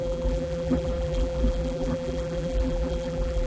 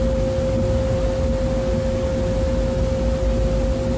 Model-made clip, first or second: first